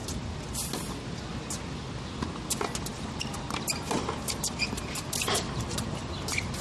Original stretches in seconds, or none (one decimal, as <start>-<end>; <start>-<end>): 0.0-6.6